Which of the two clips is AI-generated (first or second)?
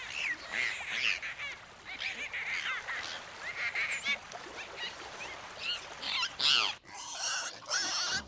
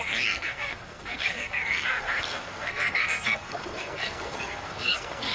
second